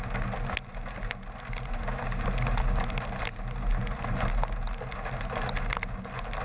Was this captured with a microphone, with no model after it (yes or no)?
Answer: yes